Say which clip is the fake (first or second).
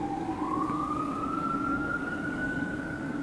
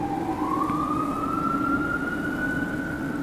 first